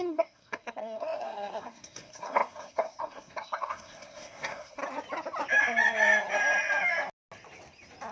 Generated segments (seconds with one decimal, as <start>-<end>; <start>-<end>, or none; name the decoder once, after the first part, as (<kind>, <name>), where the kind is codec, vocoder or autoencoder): 0.0-4.8 (codec, SNAC)